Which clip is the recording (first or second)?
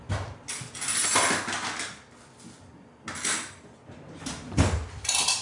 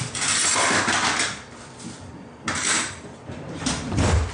first